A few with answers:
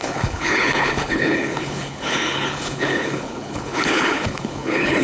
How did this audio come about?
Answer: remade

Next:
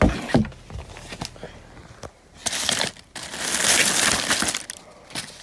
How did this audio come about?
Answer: recorded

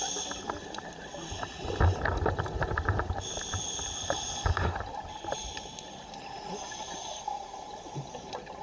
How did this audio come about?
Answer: recorded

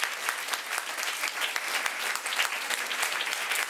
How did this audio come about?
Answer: recorded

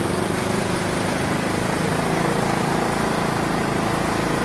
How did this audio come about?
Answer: recorded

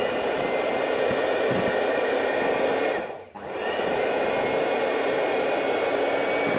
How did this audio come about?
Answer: recorded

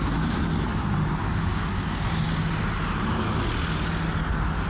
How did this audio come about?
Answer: recorded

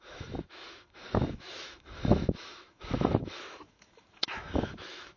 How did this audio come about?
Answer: remade